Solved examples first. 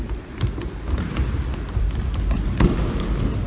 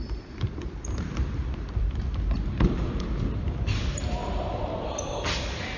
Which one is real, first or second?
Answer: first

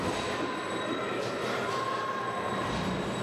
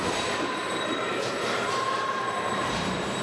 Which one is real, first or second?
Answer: first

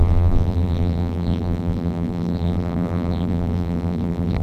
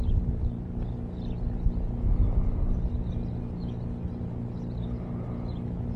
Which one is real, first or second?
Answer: second